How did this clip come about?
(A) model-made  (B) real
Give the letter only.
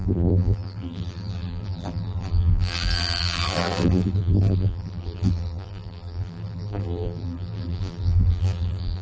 A